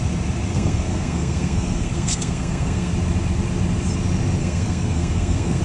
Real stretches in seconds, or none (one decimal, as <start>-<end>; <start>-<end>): 0.0-0.5; 2.9-4.4